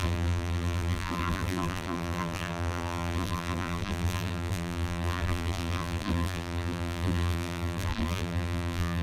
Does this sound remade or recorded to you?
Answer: remade